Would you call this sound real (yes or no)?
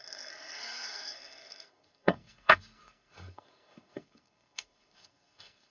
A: no